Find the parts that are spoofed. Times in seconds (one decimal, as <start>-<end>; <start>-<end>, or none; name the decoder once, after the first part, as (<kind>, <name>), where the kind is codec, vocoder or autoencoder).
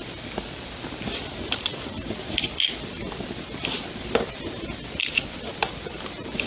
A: none